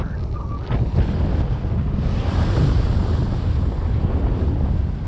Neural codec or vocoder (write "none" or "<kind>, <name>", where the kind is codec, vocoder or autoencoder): none